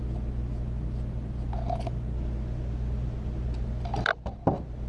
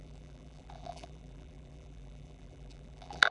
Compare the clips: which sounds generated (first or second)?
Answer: second